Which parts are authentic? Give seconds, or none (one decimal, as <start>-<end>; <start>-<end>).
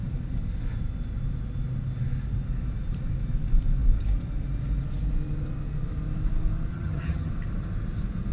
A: 0.0-6.7; 7.3-8.3